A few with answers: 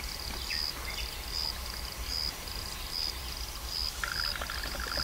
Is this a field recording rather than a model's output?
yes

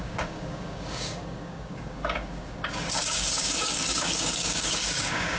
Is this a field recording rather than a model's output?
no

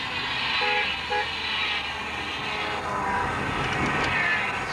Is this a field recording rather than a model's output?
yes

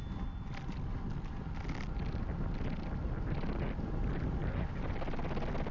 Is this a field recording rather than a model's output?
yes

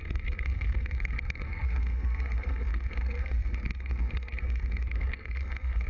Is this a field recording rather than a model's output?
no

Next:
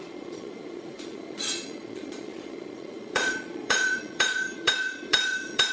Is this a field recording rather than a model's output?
no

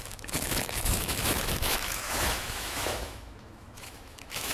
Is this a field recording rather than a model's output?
no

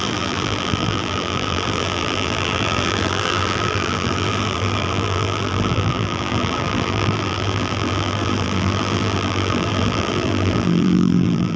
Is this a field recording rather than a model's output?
no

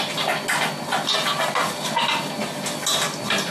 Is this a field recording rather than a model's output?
yes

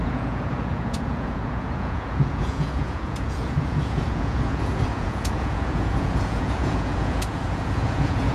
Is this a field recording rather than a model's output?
no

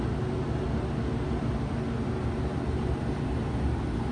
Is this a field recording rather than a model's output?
yes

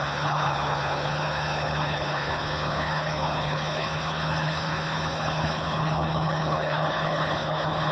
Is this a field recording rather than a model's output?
no